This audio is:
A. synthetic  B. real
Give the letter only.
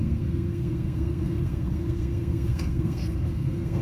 A